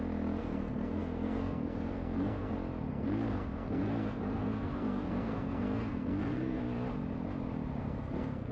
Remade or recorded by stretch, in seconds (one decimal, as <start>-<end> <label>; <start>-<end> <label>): 0.0-0.4 recorded; 0.4-2.5 remade; 2.5-2.9 recorded; 2.9-6.6 remade; 6.6-7.8 recorded; 7.8-8.5 remade